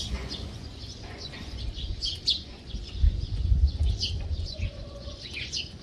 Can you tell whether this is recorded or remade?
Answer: remade